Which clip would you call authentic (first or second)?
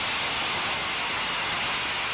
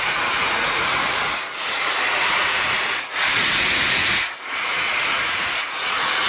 first